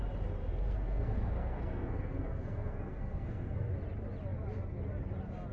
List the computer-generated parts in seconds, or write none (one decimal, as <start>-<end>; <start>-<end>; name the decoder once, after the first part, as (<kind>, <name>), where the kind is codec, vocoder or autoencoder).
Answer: 0.4-3.7 (codec, SNAC)